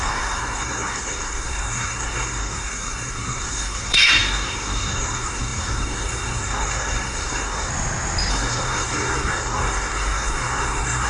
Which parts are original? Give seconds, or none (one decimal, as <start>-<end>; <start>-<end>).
7.7-8.3